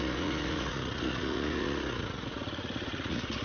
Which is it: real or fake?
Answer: fake